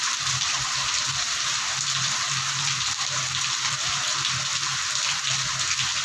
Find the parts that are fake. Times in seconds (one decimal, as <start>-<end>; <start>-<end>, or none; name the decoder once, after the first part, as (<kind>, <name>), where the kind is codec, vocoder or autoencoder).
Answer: 0.0-4.7 (vocoder, BigVGAN v2)